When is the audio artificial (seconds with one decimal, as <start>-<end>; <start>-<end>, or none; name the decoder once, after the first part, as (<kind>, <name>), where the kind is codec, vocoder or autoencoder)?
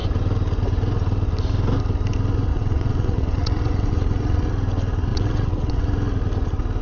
2.5-4.5 (vocoder, WaveNeXt); 5.1-5.8